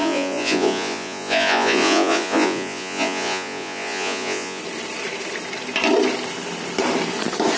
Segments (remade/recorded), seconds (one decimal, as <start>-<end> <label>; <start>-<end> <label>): 0.0-4.6 remade; 4.6-7.6 recorded

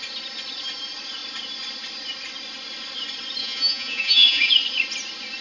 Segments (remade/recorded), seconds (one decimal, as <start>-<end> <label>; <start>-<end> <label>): 0.0-3.4 recorded; 3.4-4.5 remade; 4.5-5.4 recorded

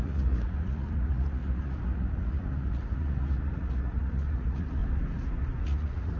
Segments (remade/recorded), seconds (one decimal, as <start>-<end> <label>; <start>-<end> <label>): 0.0-4.8 remade; 4.8-5.6 recorded; 5.6-6.2 remade

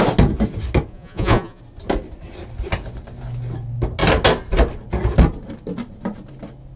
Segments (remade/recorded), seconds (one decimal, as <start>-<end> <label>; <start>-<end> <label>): 0.0-0.9 recorded; 0.9-1.6 remade; 1.6-6.8 recorded

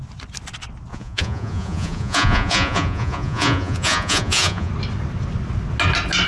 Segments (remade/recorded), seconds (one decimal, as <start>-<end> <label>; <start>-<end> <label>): 0.0-0.9 recorded; 0.9-4.7 remade; 4.7-6.3 recorded